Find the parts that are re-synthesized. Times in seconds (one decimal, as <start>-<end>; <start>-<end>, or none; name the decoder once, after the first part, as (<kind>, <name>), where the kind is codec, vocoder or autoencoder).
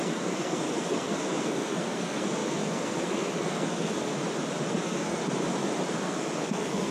0.0-4.1 (codec, SNAC); 4.7-5.2; 5.9-6.9